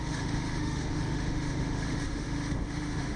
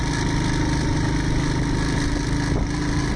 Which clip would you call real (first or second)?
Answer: second